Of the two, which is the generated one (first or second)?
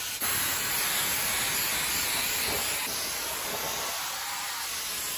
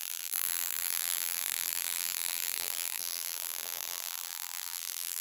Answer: second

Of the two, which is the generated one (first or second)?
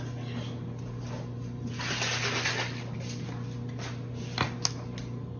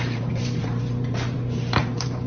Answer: second